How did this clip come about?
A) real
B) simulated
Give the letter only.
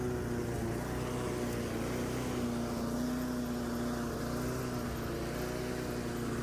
A